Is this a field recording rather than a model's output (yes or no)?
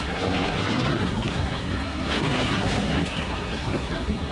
no